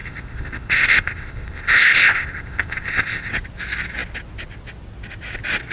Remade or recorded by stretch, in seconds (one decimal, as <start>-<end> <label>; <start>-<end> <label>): 0.0-3.3 remade; 3.3-5.7 recorded